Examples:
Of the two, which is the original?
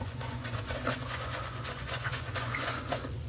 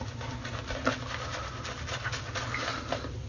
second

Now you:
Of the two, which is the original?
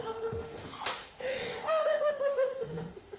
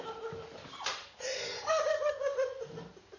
second